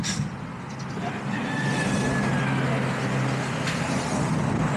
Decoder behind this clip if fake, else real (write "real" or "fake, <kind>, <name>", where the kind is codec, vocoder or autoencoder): real